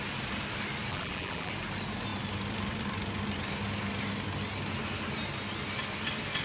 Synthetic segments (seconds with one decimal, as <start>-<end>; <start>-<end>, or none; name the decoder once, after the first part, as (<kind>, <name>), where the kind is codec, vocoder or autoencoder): 0.9-1.5 (vocoder, BigVGAN v2)